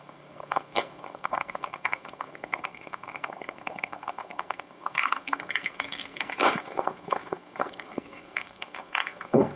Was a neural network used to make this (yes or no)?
yes